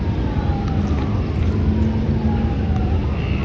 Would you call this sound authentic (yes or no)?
yes